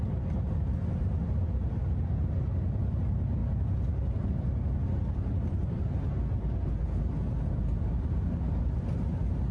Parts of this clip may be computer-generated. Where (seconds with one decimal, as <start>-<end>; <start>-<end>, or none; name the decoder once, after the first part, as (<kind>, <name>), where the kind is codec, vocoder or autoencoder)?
none